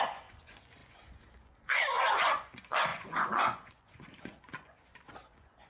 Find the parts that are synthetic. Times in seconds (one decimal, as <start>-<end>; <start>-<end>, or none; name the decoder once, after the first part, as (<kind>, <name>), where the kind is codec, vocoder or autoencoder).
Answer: 0.0-5.7 (vocoder, Vocos)